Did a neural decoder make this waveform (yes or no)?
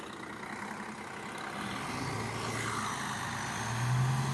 no